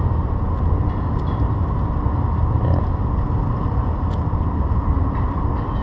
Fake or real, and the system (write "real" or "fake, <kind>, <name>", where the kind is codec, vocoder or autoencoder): real